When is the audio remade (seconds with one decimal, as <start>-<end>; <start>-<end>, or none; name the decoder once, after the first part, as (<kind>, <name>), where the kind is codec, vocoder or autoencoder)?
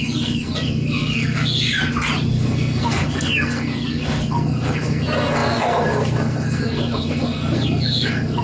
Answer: 0.0-1.7 (codec, SNAC); 2.3-8.4